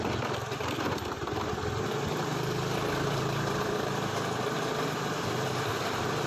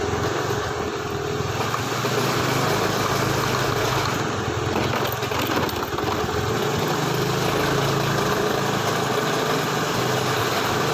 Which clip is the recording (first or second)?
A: second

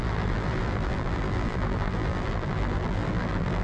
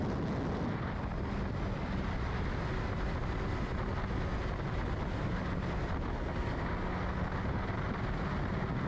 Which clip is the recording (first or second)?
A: second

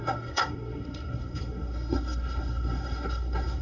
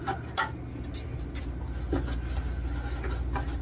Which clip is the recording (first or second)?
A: second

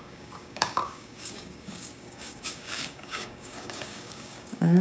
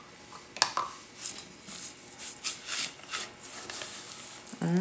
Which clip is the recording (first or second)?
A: second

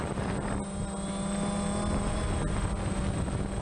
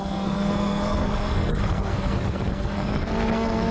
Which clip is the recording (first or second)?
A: first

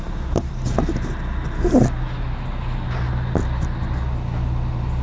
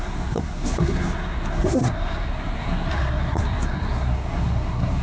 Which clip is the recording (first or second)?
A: first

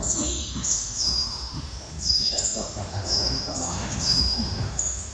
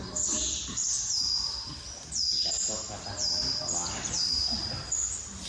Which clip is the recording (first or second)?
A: second